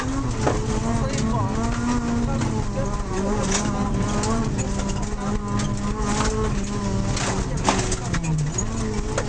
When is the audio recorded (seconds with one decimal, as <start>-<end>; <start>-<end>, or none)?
0.0-3.1; 4.4-9.3